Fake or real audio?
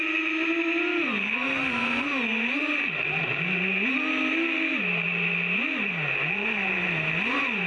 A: real